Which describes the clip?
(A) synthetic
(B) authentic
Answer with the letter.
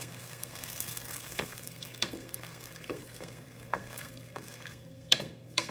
A